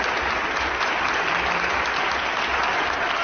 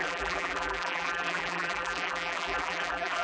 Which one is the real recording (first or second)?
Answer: first